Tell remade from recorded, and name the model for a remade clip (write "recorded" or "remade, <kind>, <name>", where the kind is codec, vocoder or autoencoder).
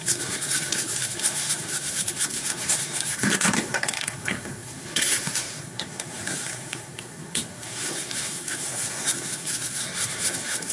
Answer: remade, codec, SNAC